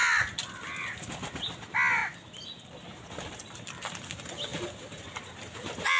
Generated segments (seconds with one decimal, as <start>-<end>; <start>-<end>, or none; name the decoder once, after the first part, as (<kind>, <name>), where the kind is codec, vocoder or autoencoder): none